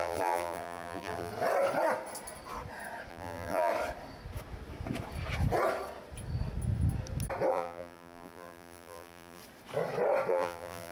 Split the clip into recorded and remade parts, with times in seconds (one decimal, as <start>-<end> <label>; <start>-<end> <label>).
0.0-1.3 remade; 1.3-3.1 recorded; 3.1-3.7 remade; 3.7-7.5 recorded; 7.5-9.4 remade; 9.4-10.3 recorded; 10.3-10.9 remade